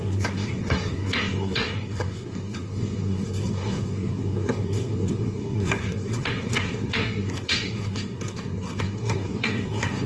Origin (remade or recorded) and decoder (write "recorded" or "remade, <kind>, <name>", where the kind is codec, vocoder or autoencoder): remade, codec, SNAC